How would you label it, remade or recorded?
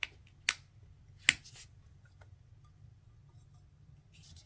recorded